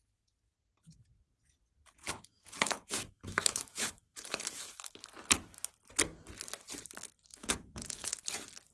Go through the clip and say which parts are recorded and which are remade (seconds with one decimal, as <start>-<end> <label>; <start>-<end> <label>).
0.0-2.0 recorded; 2.0-5.0 remade; 5.0-7.3 recorded; 7.3-8.1 remade; 8.1-8.7 recorded